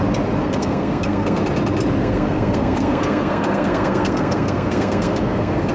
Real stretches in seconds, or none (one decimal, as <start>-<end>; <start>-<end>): 0.0-0.4; 1.4-2.0